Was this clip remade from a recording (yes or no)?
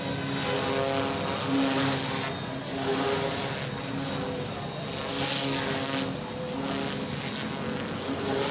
no